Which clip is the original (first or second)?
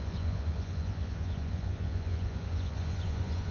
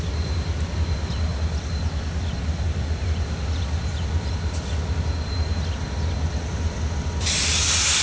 second